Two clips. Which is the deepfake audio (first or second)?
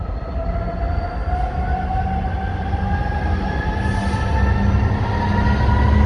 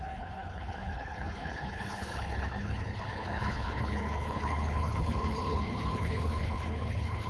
second